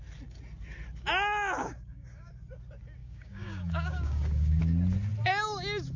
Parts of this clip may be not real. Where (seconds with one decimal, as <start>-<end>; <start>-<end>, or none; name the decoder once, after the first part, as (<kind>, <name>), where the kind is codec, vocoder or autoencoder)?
1.6-2.3 (codec, DAC); 3.0-4.6